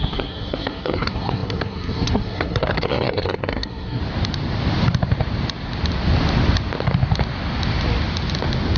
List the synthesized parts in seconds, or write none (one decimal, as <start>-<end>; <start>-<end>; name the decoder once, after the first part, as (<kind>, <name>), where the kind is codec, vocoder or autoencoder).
0.0-4.0 (codec, SNAC)